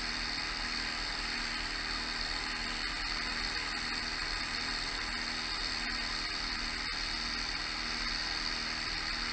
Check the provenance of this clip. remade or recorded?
recorded